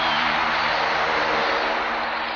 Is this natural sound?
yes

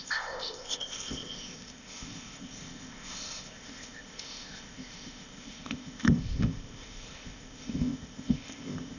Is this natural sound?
no